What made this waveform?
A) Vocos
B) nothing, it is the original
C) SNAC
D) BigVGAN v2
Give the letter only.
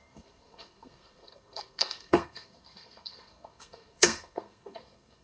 C